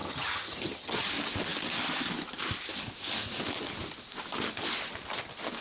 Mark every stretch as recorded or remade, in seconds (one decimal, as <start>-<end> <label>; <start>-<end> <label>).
0.0-1.1 remade; 1.1-5.6 recorded